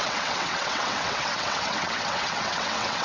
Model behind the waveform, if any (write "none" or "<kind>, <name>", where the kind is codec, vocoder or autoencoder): vocoder, WaveNeXt